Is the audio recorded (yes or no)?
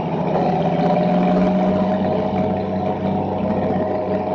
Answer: yes